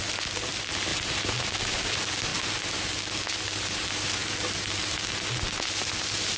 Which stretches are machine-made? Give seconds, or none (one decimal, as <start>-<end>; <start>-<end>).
none